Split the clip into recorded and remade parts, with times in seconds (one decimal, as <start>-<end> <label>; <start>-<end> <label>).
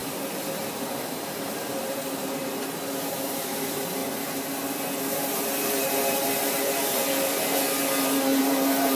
0.0-0.8 recorded; 0.8-4.0 remade; 4.0-5.0 recorded; 5.0-7.0 remade; 7.0-8.4 recorded; 8.4-8.9 remade